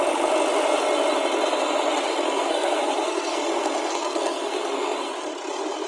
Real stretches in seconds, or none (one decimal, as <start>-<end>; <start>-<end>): 0.0-2.1; 5.1-5.9

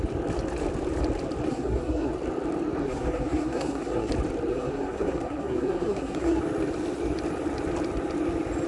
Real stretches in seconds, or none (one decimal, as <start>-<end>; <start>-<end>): 0.0-1.5; 2.1-2.8; 4.1-4.5; 6.4-8.7

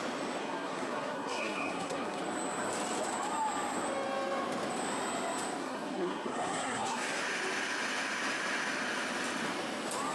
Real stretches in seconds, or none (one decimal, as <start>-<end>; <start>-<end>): 0.0-0.4; 2.2-5.6; 7.2-10.1

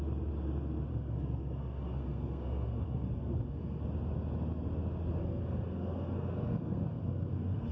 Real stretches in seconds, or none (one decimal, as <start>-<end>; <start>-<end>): 0.0-0.9; 3.8-5.2

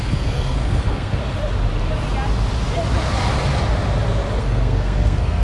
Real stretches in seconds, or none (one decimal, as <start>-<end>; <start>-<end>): 1.2-4.4

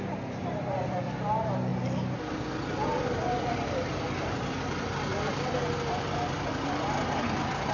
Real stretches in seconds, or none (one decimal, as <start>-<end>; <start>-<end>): 0.0-7.7